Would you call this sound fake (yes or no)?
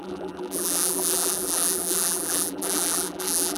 yes